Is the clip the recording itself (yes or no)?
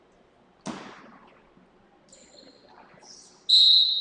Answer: yes